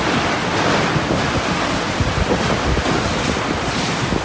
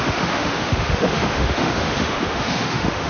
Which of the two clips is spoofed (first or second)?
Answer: second